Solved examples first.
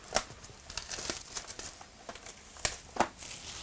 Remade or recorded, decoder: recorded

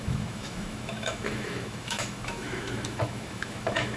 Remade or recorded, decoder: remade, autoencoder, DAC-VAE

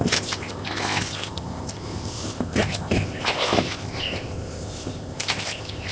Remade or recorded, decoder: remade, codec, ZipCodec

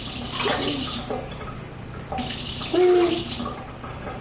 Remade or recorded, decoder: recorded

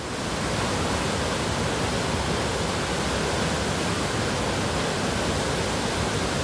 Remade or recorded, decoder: recorded